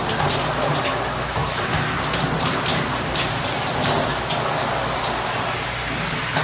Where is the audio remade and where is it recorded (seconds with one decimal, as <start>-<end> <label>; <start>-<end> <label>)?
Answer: 0.0-1.4 recorded; 1.4-4.0 remade; 4.0-6.4 recorded